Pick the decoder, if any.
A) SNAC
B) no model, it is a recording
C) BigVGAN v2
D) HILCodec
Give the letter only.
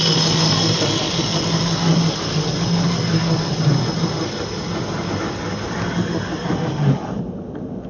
B